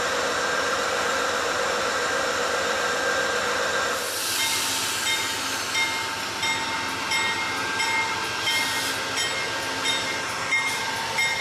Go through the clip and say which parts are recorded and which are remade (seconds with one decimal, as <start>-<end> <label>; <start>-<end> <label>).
0.0-11.4 recorded